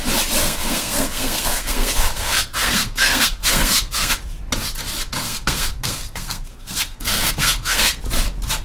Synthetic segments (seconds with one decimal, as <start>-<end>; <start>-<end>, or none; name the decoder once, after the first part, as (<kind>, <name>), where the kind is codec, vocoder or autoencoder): 0.4-4.1 (codec, SNAC); 5.2-8.0